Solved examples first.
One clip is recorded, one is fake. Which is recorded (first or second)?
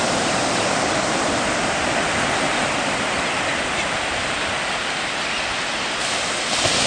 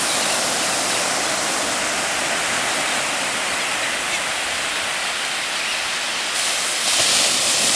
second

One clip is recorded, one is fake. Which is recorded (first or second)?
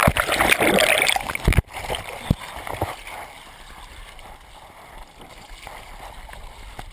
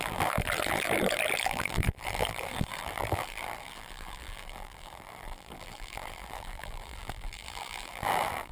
first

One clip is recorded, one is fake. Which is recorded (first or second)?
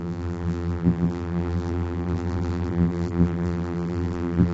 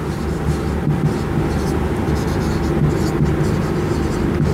second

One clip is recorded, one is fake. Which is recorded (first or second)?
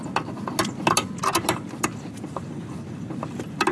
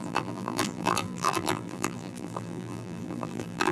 first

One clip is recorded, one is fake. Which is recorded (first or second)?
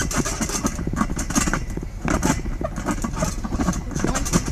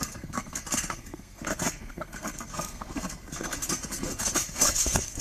first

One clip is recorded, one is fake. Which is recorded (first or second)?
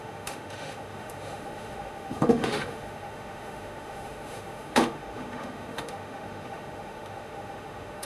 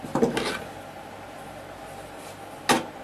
second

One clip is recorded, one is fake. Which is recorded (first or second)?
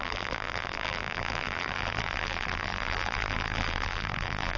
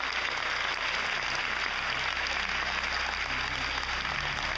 second